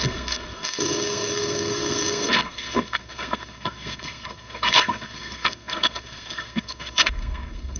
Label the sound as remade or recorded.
remade